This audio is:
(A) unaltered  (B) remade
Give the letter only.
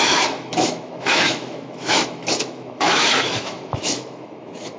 B